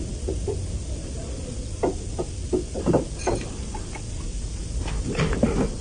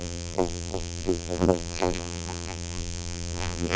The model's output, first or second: second